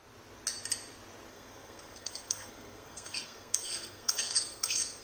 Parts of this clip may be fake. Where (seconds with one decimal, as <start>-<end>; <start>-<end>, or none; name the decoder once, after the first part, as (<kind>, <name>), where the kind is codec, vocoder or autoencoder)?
1.3-5.0 (codec, SNAC)

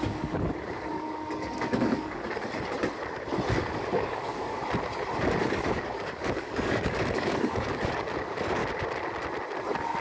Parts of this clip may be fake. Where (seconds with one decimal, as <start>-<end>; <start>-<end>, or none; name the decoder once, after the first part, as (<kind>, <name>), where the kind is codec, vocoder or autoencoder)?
0.0-2.4 (codec, DAC); 3.6-4.6; 5.2-8.6

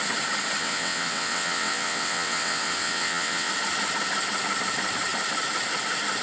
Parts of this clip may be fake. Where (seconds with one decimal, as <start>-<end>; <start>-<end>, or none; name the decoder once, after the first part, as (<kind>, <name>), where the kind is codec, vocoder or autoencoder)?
0.6-3.5 (vocoder, WaveNeXt)

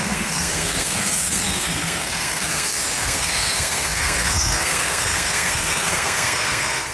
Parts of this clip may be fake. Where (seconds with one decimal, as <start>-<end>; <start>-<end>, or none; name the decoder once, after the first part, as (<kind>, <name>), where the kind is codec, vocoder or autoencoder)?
0.0-6.9 (codec, SNAC)

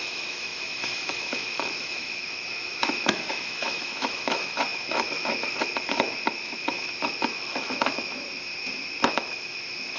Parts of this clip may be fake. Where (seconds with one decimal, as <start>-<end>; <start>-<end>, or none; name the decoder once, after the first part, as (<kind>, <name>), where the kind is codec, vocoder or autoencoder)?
0.0-8.5 (autoencoder, DAC-VAE); 9.1-10.0

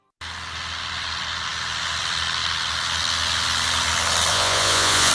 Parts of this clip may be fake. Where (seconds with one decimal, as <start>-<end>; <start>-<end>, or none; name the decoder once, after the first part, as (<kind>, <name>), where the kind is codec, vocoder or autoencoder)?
4.3-5.1 (vocoder, Vocos)

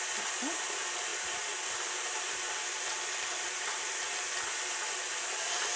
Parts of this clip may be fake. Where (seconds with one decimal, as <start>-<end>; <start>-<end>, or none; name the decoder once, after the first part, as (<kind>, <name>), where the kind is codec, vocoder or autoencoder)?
1.1-4.0 (vocoder, BigVGAN v2)